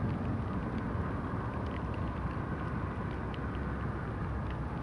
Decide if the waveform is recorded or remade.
recorded